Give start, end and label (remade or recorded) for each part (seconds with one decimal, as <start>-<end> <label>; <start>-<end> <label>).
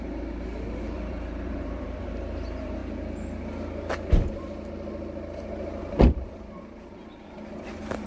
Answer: 0.0-2.8 remade; 2.8-5.8 recorded; 5.8-8.1 remade